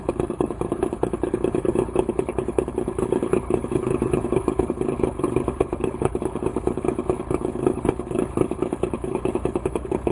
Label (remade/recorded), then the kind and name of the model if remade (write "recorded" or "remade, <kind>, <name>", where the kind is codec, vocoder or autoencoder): remade, codec, HILCodec